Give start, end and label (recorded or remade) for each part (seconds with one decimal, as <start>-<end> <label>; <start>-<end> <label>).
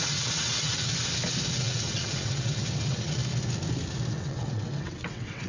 0.0-0.9 remade; 0.9-1.6 recorded; 1.6-3.2 remade; 3.2-4.1 recorded; 4.1-5.5 remade